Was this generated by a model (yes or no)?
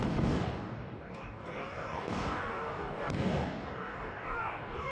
yes